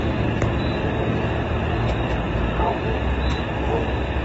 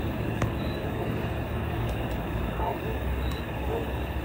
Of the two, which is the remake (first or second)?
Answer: second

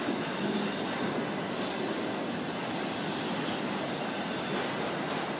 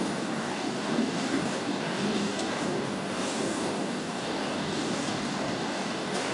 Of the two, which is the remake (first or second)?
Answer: second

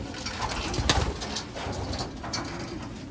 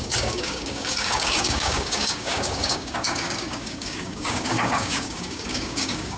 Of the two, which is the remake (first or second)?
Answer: second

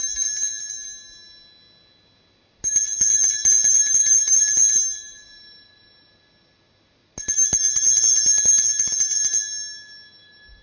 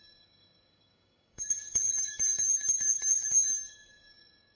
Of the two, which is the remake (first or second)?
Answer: second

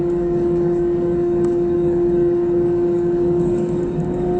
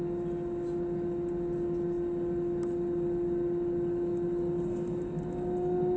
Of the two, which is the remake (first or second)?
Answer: first